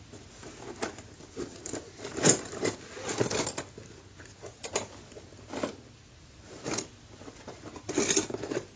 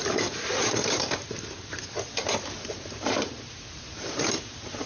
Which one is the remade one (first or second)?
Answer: second